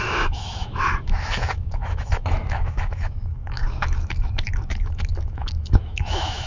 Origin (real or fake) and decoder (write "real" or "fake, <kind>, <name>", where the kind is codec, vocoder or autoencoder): fake, autoencoder, DAC-VAE